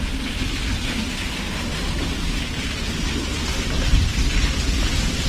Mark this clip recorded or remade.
recorded